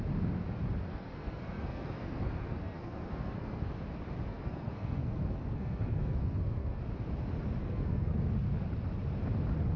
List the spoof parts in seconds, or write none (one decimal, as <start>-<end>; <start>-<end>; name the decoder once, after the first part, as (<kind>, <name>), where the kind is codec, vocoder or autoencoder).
0.9-3.8 (codec, SNAC); 4.3-6.8; 7.6-8.3